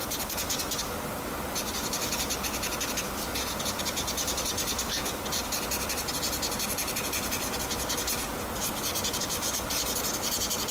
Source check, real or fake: real